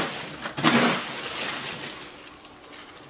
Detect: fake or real real